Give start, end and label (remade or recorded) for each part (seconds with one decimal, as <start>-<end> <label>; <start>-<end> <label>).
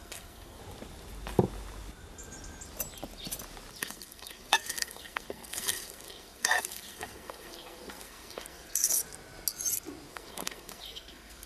0.0-0.6 remade; 0.6-3.8 recorded; 3.8-9.0 remade; 9.0-10.1 recorded; 10.1-11.5 remade